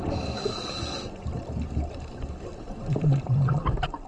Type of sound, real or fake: real